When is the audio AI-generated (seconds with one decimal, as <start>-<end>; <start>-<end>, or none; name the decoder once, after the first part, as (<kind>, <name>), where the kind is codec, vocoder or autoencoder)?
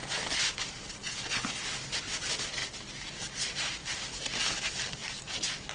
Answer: none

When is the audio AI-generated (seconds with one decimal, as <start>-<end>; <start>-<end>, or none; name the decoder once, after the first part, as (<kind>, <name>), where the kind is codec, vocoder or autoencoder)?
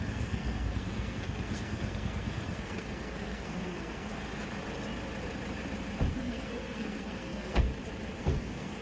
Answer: 0.0-4.1 (codec, SNAC); 6.1-7.7; 8.2-8.8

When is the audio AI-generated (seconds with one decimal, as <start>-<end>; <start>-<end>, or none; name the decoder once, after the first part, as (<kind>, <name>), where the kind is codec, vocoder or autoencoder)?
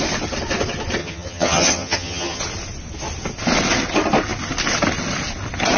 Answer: 1.0-2.4 (vocoder, HiFi-GAN)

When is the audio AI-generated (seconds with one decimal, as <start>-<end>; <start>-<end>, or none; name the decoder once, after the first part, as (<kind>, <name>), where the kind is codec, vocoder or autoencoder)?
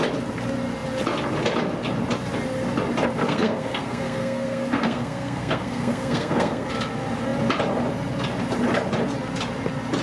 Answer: 3.2-6.7 (codec, SNAC)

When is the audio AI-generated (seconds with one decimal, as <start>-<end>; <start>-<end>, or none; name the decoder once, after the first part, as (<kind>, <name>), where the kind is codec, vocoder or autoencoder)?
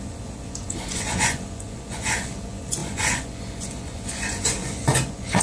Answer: 0.0-5.4 (vocoder, Vocos)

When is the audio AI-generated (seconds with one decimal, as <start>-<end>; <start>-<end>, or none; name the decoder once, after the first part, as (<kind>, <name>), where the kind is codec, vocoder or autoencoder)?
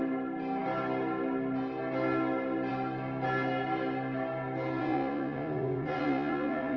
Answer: 4.8-6.8 (vocoder, Vocos)